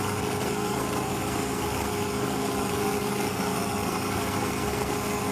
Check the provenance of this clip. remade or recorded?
remade